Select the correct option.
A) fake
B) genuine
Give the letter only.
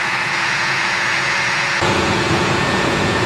A